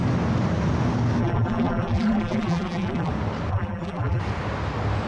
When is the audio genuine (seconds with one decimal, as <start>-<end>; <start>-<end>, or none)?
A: 0.0-1.2; 3.1-3.5; 4.2-5.1